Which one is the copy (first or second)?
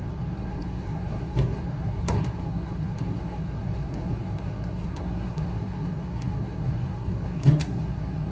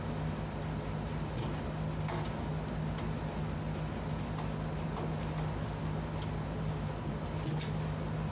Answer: first